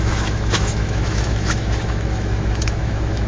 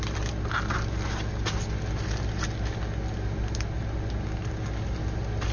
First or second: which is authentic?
second